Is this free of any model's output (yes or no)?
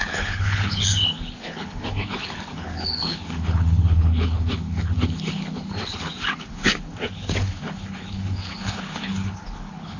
no